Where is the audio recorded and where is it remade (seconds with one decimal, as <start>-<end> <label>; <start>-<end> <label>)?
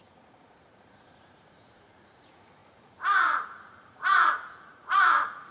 0.0-5.5 remade